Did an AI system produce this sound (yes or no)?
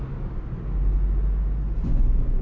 no